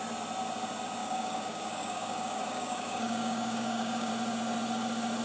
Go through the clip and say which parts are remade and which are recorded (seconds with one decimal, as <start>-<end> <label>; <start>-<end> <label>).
0.0-1.0 recorded; 1.0-4.1 remade; 4.1-5.2 recorded